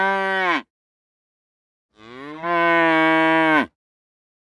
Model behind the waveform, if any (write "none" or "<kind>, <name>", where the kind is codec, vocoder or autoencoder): none